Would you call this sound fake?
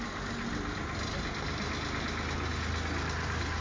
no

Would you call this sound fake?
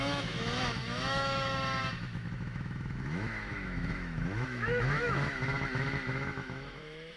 yes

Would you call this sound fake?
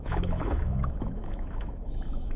yes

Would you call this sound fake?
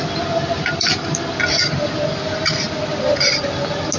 no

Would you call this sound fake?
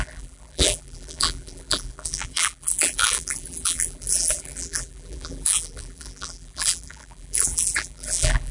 yes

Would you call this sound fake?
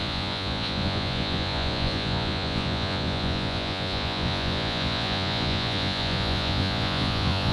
yes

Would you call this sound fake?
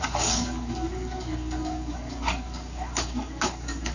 yes